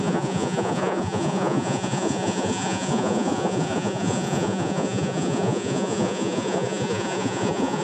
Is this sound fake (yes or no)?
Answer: yes